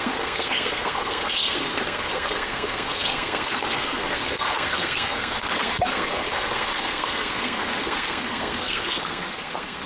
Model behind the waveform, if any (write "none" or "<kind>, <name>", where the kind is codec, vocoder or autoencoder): codec, SNAC